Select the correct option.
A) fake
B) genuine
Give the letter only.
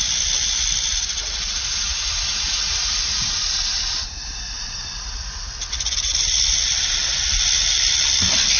B